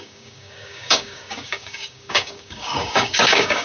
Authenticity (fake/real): fake